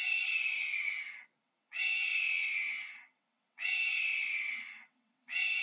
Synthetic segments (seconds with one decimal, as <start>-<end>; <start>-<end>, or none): 1.4-5.6